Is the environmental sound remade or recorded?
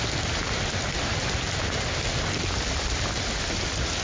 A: recorded